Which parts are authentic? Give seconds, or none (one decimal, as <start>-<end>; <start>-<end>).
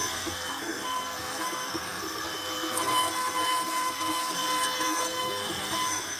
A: none